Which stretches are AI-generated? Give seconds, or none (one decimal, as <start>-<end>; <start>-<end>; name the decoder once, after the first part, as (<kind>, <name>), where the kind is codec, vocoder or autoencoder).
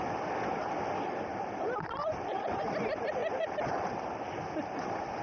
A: none